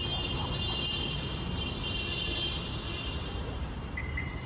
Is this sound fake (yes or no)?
no